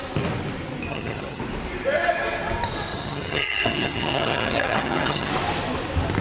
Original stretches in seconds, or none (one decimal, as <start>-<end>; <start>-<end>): 0.0-0.9; 1.4-2.9; 5.3-6.2

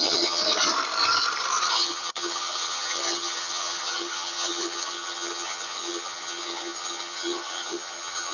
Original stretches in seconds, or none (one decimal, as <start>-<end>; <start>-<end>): 0.4-1.7

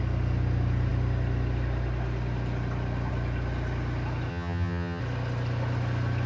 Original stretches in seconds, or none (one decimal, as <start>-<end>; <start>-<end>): 0.0-4.3; 5.0-6.3

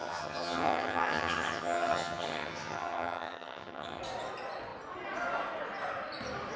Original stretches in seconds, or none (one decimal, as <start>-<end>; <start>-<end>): 4.0-6.6

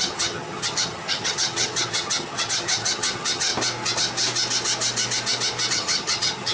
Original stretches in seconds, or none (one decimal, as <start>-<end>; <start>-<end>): 3.5-5.7

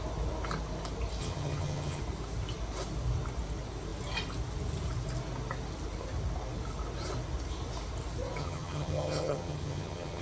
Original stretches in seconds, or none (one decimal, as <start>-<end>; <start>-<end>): 0.0-1.2; 2.0-8.4